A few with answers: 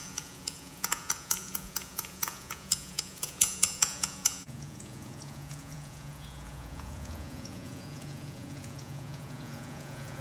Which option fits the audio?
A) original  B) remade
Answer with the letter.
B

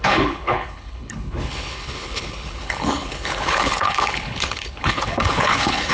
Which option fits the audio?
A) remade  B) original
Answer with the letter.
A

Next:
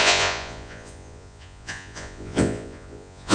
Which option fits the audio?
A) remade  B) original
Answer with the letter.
A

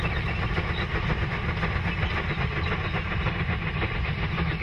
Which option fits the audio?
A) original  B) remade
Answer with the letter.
A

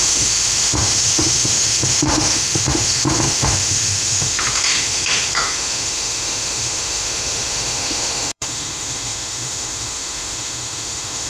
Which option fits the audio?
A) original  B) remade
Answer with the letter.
B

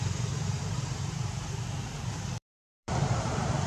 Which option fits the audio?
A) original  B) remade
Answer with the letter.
B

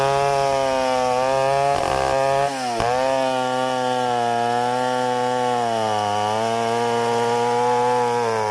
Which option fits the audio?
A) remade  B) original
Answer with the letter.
B